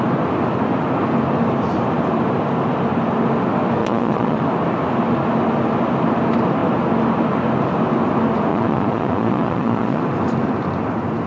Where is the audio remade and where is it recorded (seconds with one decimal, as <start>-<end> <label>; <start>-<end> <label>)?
0.0-3.8 recorded; 3.8-4.4 remade; 4.4-8.5 recorded; 8.5-10.0 remade; 10.0-11.3 recorded